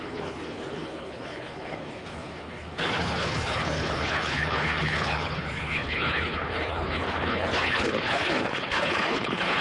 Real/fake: fake